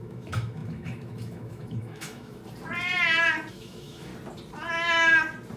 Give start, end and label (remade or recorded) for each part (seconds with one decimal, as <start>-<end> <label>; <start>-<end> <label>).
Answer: 0.0-2.4 remade; 2.4-3.5 recorded; 3.5-4.1 remade; 4.1-5.6 recorded